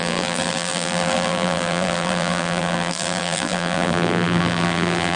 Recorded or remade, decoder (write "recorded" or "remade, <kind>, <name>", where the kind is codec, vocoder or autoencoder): remade, vocoder, BigVGAN v2